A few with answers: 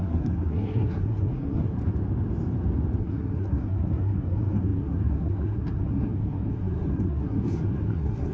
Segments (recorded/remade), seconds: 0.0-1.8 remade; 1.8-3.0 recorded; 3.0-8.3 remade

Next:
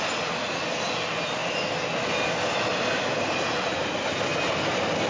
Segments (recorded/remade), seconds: 0.0-5.1 recorded

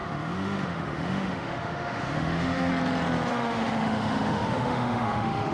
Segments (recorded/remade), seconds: 0.0-2.7 remade; 2.7-3.3 recorded; 3.3-5.5 remade